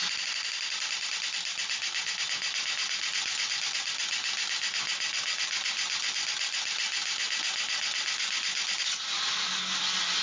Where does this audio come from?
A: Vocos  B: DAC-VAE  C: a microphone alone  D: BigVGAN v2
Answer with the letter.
C